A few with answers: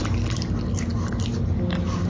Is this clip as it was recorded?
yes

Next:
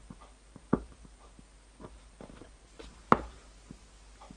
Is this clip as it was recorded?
yes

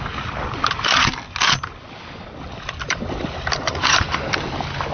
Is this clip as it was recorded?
yes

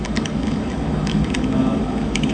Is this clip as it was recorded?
no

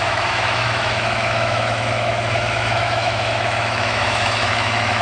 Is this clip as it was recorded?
no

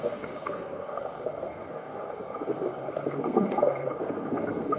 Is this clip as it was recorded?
no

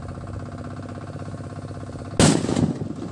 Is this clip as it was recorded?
yes